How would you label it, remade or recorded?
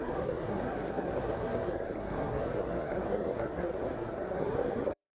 remade